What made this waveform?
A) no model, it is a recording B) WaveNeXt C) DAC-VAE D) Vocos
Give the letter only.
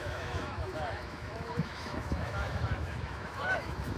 C